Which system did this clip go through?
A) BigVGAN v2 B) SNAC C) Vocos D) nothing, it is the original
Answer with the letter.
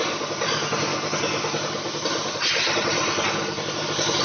D